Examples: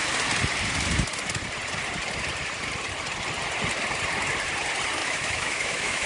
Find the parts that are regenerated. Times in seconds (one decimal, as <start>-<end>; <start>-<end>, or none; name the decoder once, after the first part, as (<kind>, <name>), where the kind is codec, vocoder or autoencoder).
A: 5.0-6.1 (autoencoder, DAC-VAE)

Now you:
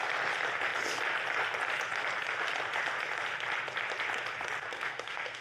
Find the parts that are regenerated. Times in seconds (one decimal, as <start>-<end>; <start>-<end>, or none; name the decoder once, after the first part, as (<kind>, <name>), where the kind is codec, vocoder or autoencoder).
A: 4.7-5.4 (codec, SNAC)

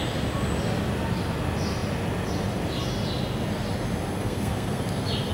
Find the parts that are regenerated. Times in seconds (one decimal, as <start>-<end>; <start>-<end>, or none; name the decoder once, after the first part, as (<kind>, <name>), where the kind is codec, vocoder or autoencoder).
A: 4.2-4.8 (codec, SNAC)

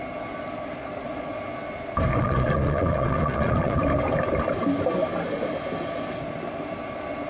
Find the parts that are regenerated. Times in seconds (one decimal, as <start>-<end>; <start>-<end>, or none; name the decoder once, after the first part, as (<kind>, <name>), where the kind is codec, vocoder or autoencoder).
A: 0.8-1.4 (vocoder, Vocos); 2.1-3.8

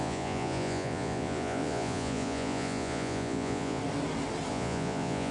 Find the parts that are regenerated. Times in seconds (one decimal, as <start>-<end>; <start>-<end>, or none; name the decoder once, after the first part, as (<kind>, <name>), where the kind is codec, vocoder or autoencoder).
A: 0.0-3.8 (vocoder, Vocos); 4.5-5.3

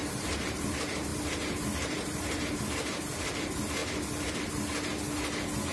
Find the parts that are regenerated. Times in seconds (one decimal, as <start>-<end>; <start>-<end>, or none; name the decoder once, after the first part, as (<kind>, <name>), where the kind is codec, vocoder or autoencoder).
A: 0.0-0.7 (vocoder, BigVGAN v2); 1.1-2.6

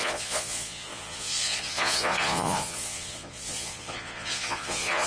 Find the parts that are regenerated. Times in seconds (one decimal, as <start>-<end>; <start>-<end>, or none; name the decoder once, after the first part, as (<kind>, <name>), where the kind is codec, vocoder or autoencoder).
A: 0.0-5.1 (vocoder, Vocos)